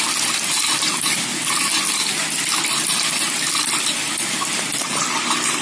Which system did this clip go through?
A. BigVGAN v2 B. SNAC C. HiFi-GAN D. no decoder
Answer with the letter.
A